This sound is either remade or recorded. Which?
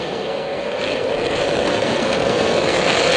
remade